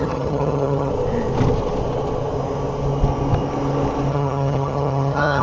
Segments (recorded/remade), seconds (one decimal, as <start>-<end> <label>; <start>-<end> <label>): 0.0-0.9 remade; 0.9-4.1 recorded; 4.1-5.4 remade

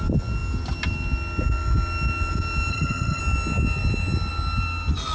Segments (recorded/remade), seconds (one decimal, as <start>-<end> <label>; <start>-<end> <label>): 0.0-2.7 recorded; 2.7-3.2 remade; 3.2-5.1 recorded

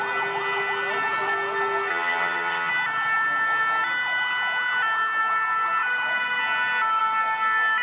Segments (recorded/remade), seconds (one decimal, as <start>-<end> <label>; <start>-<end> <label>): 0.0-1.9 recorded; 1.9-2.7 remade; 2.7-7.8 recorded

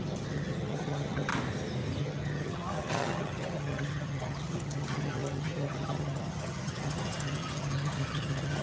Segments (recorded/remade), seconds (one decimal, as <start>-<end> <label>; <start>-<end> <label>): 0.0-1.3 remade; 1.3-2.0 recorded; 2.0-8.6 remade

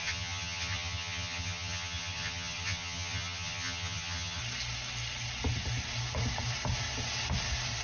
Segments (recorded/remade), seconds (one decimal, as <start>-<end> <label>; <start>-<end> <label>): 0.0-4.4 remade; 4.4-7.8 recorded

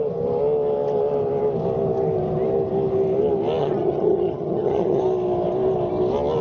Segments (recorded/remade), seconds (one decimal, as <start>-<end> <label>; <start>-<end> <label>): 0.0-3.6 recorded; 3.6-5.0 remade; 5.0-6.4 recorded

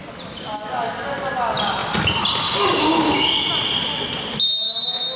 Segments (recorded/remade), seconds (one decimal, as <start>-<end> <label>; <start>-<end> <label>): 0.0-5.2 recorded